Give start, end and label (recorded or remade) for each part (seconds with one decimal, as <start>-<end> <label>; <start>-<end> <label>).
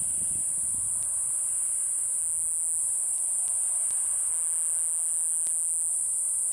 0.0-2.2 remade; 2.2-2.8 recorded; 2.8-4.3 remade; 4.3-5.9 recorded; 5.9-6.5 remade